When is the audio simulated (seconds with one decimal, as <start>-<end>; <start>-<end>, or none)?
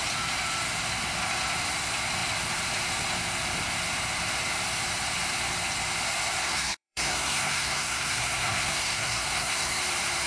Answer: 6.4-9.8